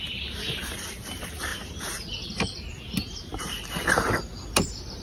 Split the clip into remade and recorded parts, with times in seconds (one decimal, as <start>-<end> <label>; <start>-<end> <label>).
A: 0.0-1.5 remade; 1.5-4.5 recorded; 4.5-5.0 remade